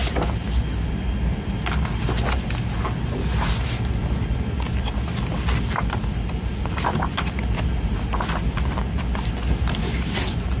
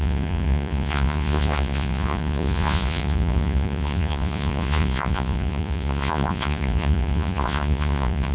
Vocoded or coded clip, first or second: second